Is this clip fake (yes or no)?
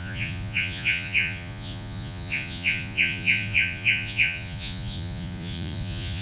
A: yes